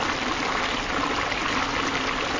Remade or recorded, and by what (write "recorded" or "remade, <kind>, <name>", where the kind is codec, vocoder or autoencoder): recorded